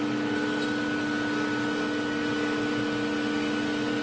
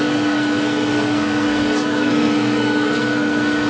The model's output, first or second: second